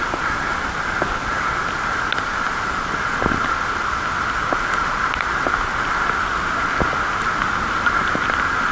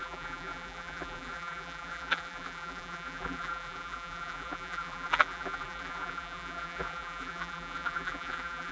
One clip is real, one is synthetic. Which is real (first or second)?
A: first